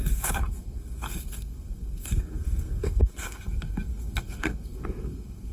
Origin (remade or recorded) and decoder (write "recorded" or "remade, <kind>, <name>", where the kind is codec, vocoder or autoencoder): remade, codec, SNAC